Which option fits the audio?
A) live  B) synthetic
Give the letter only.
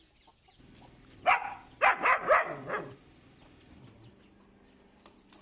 A